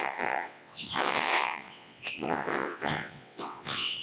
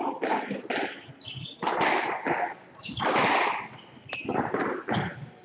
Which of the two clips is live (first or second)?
second